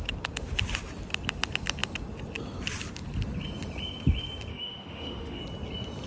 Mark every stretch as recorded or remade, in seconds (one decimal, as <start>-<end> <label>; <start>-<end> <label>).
0.0-4.5 recorded; 4.5-5.4 remade; 5.4-6.1 recorded